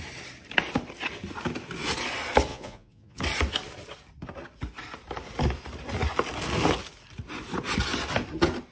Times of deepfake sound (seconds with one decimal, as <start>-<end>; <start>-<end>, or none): 2.5-3.2